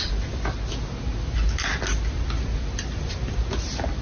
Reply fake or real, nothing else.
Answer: real